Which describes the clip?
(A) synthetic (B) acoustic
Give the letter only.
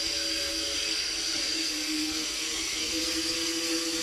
A